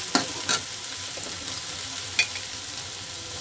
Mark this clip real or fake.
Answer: real